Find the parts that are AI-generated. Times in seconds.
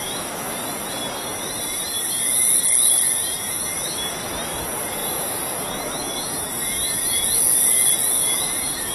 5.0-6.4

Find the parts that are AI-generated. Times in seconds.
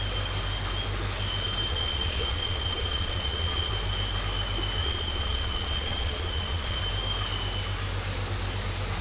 1.7-3.7; 4.8-6.8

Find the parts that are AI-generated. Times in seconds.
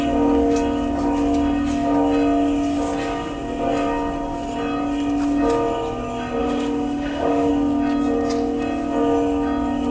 6.4-7.5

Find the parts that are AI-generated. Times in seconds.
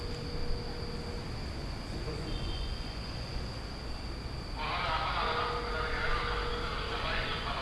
1.6-3.4; 6.9-7.6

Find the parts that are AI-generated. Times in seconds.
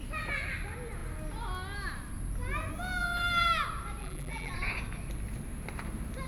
4.0-4.5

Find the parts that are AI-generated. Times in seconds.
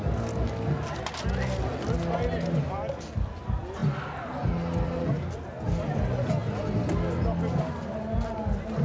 none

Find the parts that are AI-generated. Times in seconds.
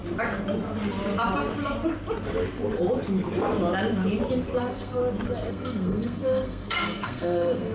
4.6-5.0; 5.5-7.7